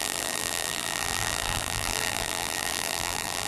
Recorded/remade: remade